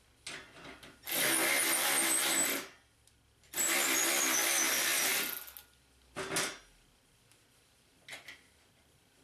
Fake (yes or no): no